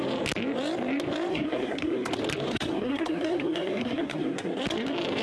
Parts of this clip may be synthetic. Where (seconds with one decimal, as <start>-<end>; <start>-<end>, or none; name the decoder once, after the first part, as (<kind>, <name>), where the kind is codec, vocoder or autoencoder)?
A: 1.3-2.1 (codec, SNAC); 2.5-4.6